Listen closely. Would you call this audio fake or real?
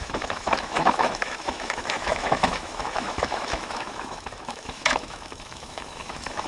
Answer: fake